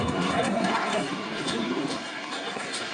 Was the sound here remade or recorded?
remade